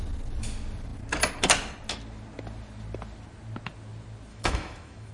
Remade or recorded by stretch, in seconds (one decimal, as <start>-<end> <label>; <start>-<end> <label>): 0.0-4.3 recorded; 4.3-5.1 remade